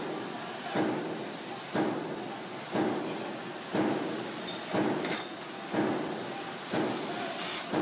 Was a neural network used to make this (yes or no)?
no